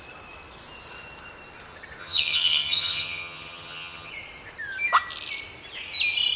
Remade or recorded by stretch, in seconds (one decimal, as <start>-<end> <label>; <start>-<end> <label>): 0.0-2.0 recorded; 2.0-4.1 remade; 4.1-6.4 recorded